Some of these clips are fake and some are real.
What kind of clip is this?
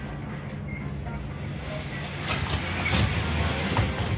real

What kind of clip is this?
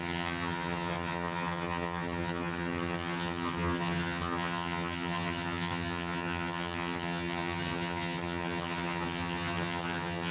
fake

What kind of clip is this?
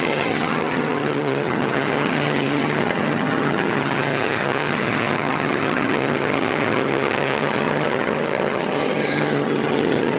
fake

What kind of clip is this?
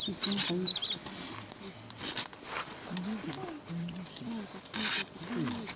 real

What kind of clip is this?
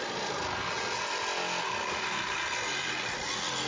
real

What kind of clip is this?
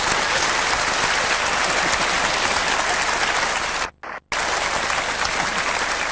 real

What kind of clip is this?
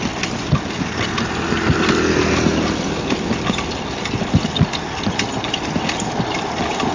real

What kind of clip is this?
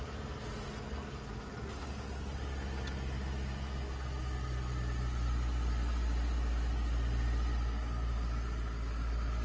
real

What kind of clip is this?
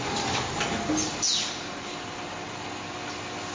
real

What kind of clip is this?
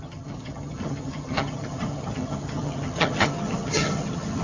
fake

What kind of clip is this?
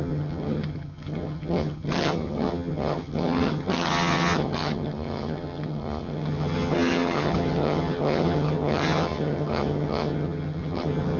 fake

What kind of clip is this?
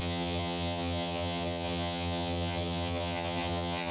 fake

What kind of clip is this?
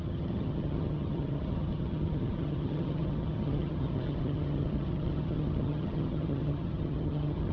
fake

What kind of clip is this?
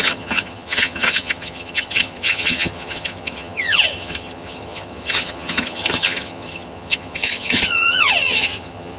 fake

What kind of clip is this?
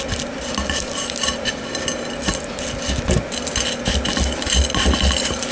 real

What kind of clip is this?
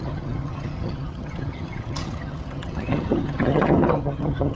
fake